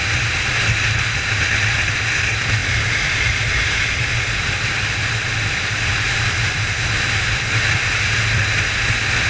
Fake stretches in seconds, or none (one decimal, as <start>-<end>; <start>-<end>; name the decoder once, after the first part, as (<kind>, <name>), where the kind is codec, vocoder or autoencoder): none